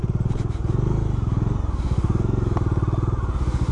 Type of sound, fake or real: real